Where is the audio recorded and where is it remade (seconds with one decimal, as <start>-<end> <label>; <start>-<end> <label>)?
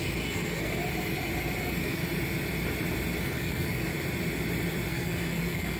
0.0-0.8 remade; 0.8-1.6 recorded; 1.6-2.0 remade; 2.0-3.2 recorded; 3.2-3.9 remade; 3.9-4.9 recorded; 4.9-5.8 remade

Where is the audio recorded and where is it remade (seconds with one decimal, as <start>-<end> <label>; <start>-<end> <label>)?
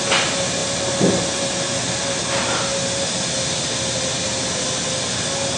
0.0-5.6 recorded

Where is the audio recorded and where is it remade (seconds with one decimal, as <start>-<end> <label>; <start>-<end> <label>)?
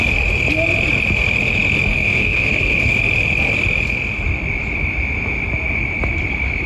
0.0-1.9 recorded; 1.9-3.0 remade; 3.0-6.7 recorded